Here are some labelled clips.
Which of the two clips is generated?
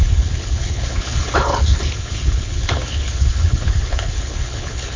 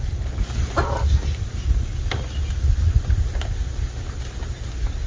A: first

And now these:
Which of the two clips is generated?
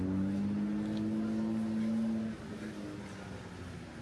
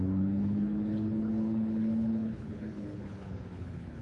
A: second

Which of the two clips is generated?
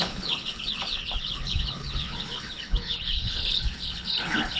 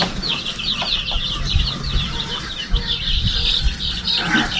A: first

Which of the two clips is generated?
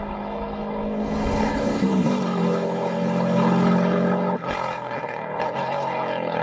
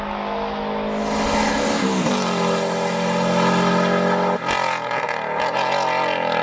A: first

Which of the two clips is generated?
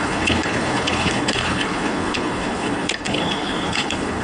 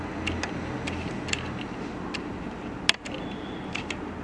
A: first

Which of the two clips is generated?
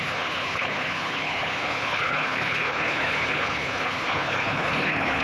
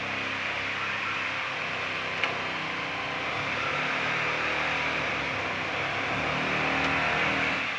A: first